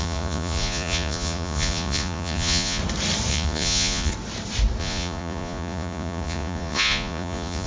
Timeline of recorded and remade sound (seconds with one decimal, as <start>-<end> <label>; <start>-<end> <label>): 0.0-2.8 remade; 2.8-3.3 recorded; 3.3-4.1 remade; 4.1-4.8 recorded; 4.8-7.7 remade